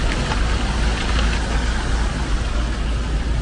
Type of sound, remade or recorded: recorded